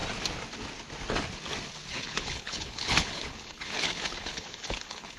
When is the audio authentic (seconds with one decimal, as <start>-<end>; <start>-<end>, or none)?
0.0-1.9